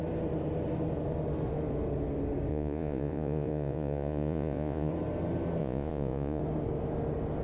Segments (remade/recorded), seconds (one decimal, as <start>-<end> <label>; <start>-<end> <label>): 0.0-2.5 recorded; 2.5-4.9 remade; 4.9-5.6 recorded; 5.6-6.4 remade; 6.4-7.4 recorded